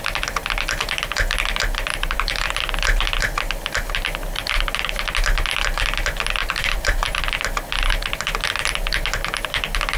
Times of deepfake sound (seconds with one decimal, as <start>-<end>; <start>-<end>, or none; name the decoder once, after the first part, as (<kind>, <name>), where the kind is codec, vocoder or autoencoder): 1.9-2.5 (vocoder, BigVGAN v2); 6.4-7.2